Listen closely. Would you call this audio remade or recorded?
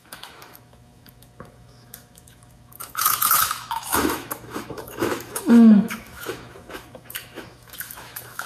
remade